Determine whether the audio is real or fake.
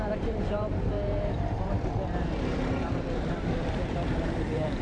fake